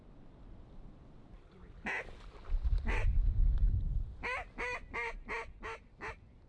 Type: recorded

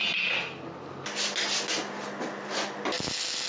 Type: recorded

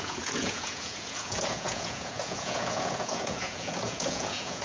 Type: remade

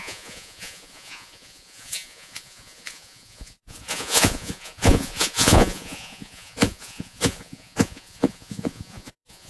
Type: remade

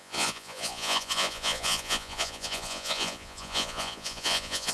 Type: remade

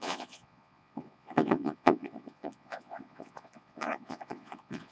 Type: remade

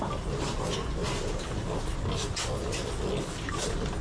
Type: recorded